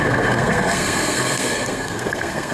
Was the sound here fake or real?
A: fake